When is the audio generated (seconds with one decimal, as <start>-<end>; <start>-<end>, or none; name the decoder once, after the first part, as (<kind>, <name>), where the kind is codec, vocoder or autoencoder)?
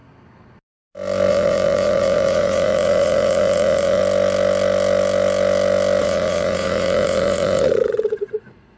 1.3-4.0 (vocoder, Vocos); 6.0-8.8